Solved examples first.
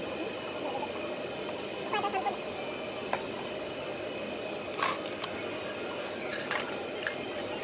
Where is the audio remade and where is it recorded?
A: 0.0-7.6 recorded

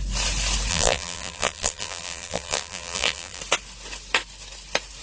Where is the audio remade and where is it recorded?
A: 0.0-0.7 recorded; 0.7-3.4 remade; 3.4-5.0 recorded

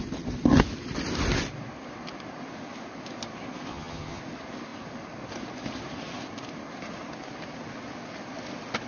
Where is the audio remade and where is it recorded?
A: 0.0-3.7 recorded; 3.7-4.2 remade; 4.2-8.9 recorded

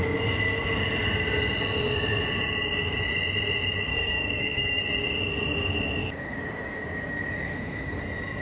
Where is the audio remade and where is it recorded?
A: 0.0-3.9 recorded; 3.9-4.8 remade; 4.8-6.0 recorded; 6.0-8.0 remade; 8.0-8.4 recorded

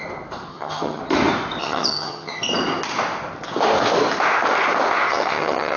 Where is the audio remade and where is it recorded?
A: 0.0-0.5 recorded; 0.5-1.0 remade; 1.0-1.6 recorded; 1.6-2.4 remade; 2.4-5.1 recorded; 5.1-5.8 remade

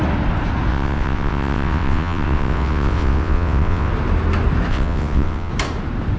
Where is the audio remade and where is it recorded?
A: 0.0-0.7 recorded; 0.7-3.9 remade; 3.9-4.7 recorded; 4.7-5.5 remade; 5.5-6.2 recorded

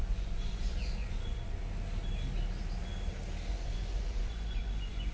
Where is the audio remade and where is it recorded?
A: 0.0-1.6 remade; 1.6-3.5 recorded; 3.5-5.1 remade

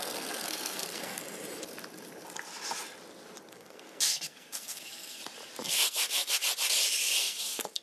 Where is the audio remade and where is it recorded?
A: 0.0-1.2 remade; 1.2-3.5 recorded; 3.5-5.2 remade; 5.2-5.7 recorded; 5.7-6.4 remade; 6.4-7.2 recorded; 7.2-7.8 remade